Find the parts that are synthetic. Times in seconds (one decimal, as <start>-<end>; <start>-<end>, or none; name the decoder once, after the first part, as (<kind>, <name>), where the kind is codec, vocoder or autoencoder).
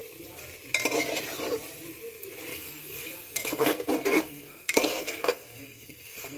2.5-6.4 (codec, SNAC)